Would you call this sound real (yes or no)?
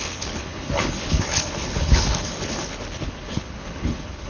no